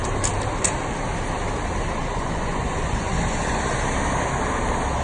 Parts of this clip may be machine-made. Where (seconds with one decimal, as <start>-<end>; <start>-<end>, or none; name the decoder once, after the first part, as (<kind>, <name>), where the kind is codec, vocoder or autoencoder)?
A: 2.0-3.6 (vocoder, Vocos)